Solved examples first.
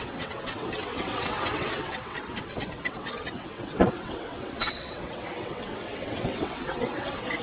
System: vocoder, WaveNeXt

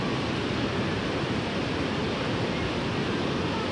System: none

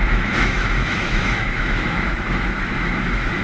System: autoencoder, DAC-VAE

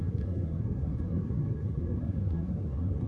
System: codec, SNAC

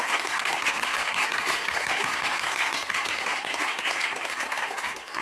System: codec, SNAC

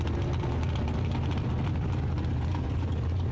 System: none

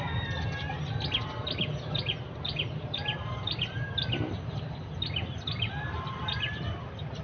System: none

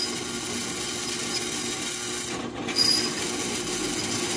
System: none